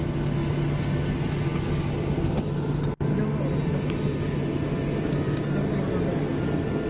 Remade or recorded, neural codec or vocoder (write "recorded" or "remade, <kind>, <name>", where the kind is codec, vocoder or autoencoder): recorded